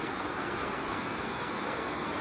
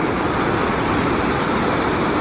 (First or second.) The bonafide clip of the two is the second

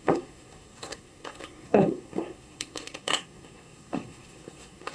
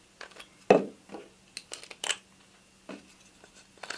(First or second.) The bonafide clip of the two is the second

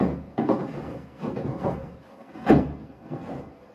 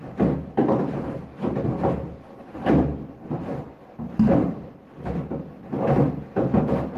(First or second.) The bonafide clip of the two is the second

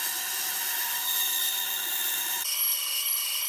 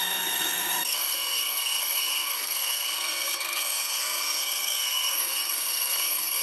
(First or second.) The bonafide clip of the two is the first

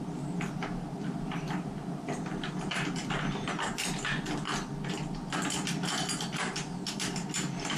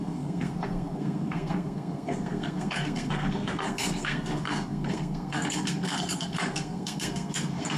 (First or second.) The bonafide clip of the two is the first